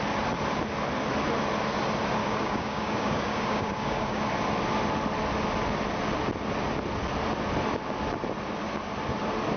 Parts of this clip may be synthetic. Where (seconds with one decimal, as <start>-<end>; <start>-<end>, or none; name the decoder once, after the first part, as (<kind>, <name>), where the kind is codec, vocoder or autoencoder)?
2.2-4.2 (codec, DAC)